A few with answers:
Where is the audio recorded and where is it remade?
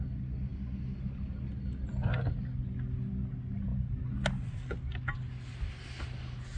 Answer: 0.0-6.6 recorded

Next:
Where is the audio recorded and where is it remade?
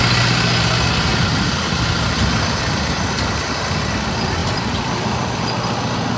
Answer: 0.0-1.1 recorded; 1.1-3.9 remade; 3.9-4.4 recorded; 4.4-5.4 remade; 5.4-6.2 recorded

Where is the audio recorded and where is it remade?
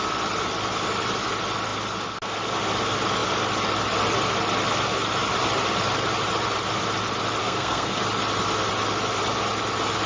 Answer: 0.0-7.4 recorded; 7.4-8.0 remade; 8.0-10.1 recorded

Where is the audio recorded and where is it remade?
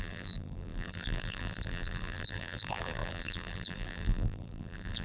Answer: 0.0-5.0 remade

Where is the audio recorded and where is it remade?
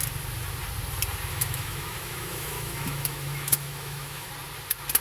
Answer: 0.0-1.3 recorded; 1.3-4.3 remade; 4.3-5.0 recorded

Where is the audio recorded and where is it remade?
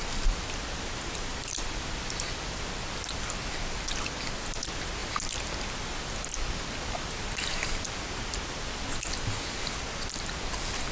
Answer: 0.0-10.9 recorded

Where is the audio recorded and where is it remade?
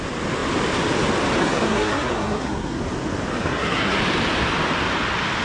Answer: 0.0-1.4 recorded; 1.4-2.8 remade; 2.8-3.3 recorded; 3.3-4.0 remade; 4.0-5.4 recorded